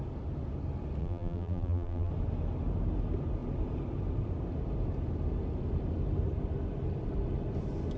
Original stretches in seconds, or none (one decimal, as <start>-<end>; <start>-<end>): 0.0-1.0; 2.1-8.0

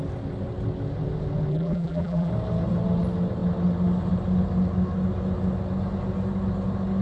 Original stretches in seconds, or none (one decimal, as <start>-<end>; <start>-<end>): 0.0-1.5; 2.3-7.0

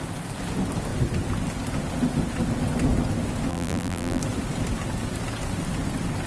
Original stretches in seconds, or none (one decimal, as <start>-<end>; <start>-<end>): 0.0-3.5; 4.2-6.3

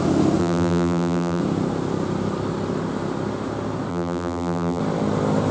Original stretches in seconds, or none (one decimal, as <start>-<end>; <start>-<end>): 0.0-0.4; 1.4-3.9; 4.8-5.5

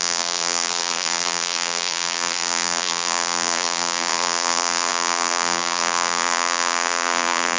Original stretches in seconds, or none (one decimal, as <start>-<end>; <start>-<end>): none

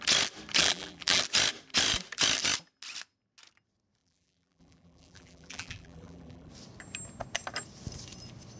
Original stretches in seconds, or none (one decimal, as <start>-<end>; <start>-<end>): 0.0-0.6; 1.2-4.0; 6.5-8.6

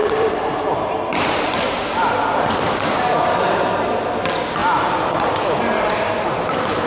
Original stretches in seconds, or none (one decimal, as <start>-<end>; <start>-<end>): 0.5-1.1; 3.7-4.6; 5.2-6.9